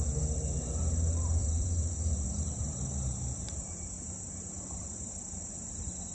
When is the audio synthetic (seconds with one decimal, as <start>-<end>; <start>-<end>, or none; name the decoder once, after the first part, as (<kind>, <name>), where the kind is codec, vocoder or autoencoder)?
1.4-5.1 (vocoder, BigVGAN v2)